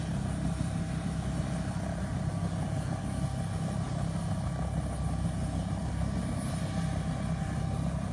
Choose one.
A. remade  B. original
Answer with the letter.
B